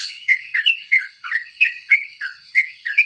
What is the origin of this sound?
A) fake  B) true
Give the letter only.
A